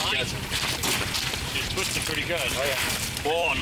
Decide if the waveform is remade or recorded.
remade